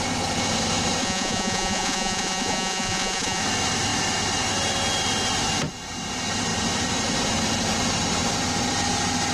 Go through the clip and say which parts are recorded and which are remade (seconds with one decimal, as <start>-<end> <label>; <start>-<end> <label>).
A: 0.0-1.0 recorded; 1.0-3.4 remade; 3.4-9.3 recorded